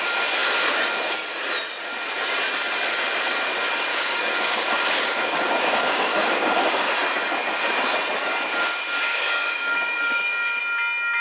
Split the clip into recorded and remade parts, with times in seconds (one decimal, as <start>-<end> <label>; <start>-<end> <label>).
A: 0.0-3.9 recorded; 3.9-6.9 remade; 6.9-9.1 recorded; 9.1-10.6 remade; 10.6-11.2 recorded